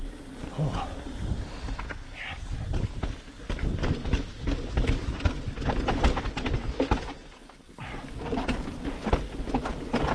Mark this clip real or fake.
real